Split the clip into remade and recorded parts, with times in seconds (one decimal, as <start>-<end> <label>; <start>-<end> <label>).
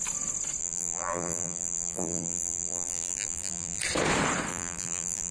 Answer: 0.0-0.6 recorded; 0.6-3.8 remade; 3.8-4.5 recorded; 4.5-5.3 remade